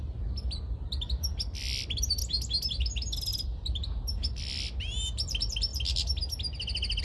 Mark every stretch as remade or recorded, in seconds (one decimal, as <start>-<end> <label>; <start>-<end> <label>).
0.0-2.2 remade; 2.2-3.3 recorded; 3.3-5.7 remade; 5.7-7.0 recorded